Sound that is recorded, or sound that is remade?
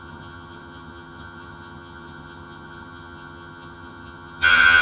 remade